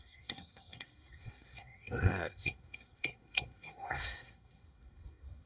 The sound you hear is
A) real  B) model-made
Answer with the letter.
B